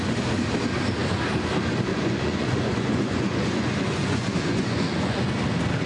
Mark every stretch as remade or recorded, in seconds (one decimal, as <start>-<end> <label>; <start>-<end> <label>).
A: 0.0-1.9 recorded; 1.9-5.3 remade; 5.3-5.9 recorded